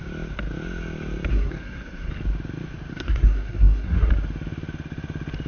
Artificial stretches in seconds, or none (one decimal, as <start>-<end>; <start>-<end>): 1.3-2.1; 2.9-4.1